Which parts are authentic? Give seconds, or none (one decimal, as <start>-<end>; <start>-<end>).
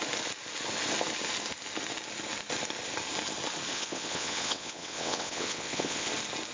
0.0-3.7; 6.1-6.5